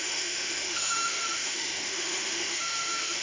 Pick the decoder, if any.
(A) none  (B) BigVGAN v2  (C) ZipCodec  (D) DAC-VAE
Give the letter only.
D